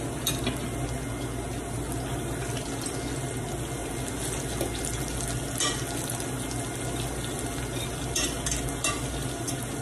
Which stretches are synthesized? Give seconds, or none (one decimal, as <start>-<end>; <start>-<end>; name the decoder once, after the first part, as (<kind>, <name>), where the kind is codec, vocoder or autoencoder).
none